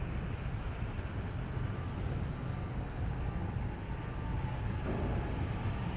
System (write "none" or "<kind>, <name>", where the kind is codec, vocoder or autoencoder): none